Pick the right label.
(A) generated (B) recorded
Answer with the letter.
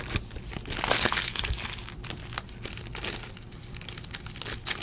B